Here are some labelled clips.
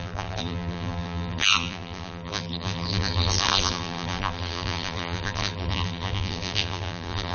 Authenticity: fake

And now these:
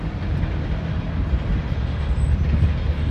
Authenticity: real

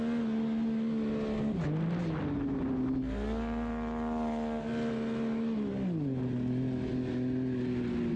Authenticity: real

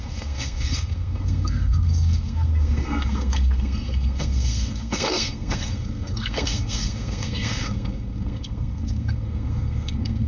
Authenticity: fake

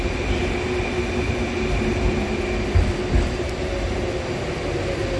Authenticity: real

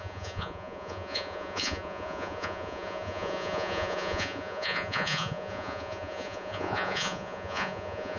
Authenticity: fake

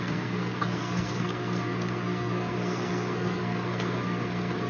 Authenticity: fake